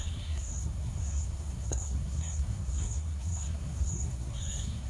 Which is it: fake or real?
fake